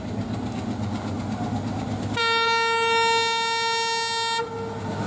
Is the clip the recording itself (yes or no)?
yes